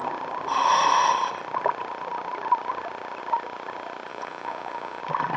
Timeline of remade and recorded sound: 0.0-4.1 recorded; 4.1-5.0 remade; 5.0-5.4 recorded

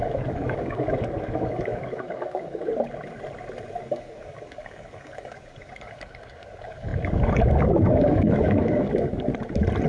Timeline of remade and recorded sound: 0.0-2.7 remade; 2.7-3.8 recorded; 3.8-9.3 remade; 9.3-9.9 recorded